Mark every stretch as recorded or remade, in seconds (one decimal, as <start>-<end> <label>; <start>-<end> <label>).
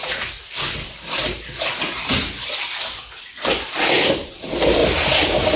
0.0-4.8 recorded; 4.8-5.6 remade